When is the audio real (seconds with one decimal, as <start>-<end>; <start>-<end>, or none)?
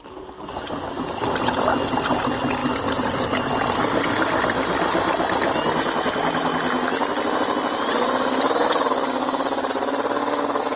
0.0-10.8